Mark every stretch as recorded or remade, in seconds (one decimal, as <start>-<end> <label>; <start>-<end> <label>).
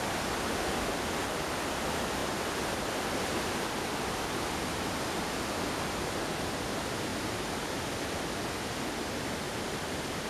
0.0-10.3 recorded